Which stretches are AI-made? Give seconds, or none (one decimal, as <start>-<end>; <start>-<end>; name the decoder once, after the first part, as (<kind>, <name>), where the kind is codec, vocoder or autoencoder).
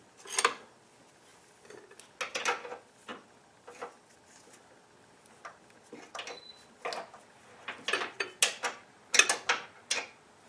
none